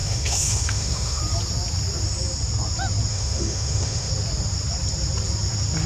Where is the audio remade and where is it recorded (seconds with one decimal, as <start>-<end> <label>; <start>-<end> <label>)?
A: 0.0-1.2 remade; 1.2-3.1 recorded; 3.1-4.1 remade; 4.1-5.9 recorded

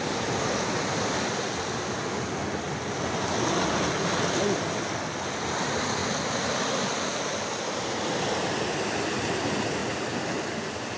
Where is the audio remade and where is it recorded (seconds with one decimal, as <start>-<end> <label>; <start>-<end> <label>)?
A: 0.0-11.0 recorded